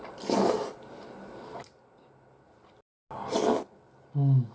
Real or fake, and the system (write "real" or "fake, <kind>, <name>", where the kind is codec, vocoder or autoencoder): real